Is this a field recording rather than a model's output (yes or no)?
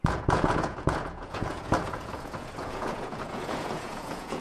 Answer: no